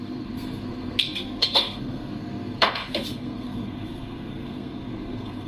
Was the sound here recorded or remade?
remade